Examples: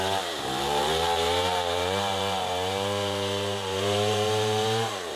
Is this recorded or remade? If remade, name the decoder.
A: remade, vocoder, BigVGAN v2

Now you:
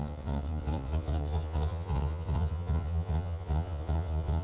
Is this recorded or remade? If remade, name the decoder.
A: remade, vocoder, Vocos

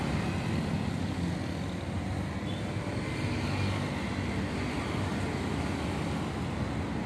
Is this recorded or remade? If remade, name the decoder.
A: recorded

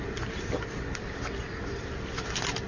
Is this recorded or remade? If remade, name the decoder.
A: remade, vocoder, BigVGAN v2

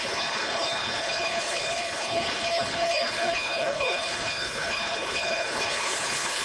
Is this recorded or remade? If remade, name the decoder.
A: remade, codec, HILCodec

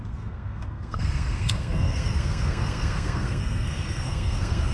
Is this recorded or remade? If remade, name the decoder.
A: remade, codec, SNAC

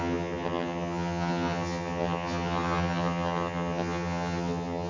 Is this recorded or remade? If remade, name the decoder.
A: remade, vocoder, HiFi-GAN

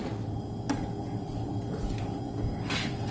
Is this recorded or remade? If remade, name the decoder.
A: recorded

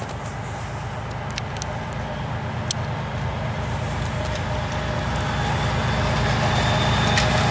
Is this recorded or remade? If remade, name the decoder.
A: recorded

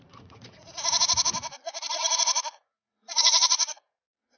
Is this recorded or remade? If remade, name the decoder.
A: remade, vocoder, Vocos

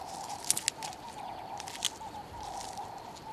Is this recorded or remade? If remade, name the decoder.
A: recorded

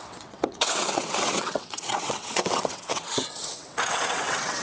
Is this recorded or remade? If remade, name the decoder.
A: remade, vocoder, WaveNeXt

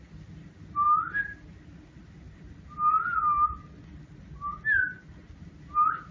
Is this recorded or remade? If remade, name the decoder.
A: recorded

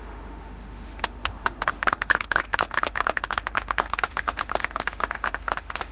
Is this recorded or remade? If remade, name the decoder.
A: remade, autoencoder, DAC-VAE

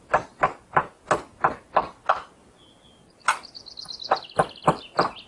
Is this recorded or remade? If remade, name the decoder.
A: recorded